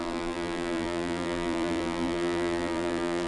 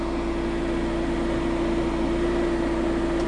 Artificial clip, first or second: first